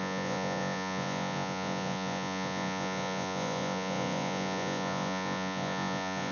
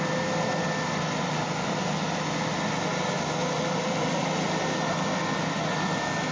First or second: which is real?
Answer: second